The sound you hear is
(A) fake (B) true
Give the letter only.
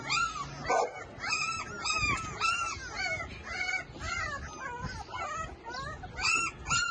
B